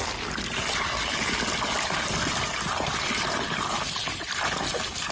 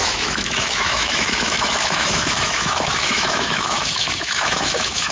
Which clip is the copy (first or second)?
second